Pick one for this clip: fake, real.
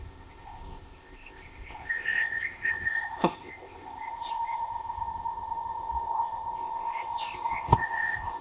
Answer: fake